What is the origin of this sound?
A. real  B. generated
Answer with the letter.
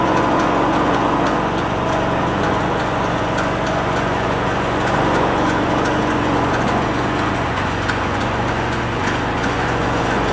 B